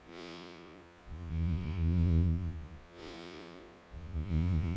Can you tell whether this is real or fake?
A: fake